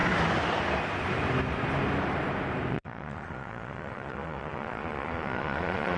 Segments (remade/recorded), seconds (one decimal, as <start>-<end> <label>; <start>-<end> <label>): 0.0-2.7 recorded; 2.7-6.0 remade